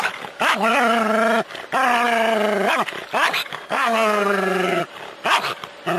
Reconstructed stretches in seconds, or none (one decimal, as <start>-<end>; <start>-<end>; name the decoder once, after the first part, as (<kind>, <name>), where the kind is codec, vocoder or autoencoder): 3.5-4.8 (codec, SNAC)